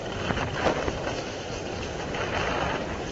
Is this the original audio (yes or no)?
yes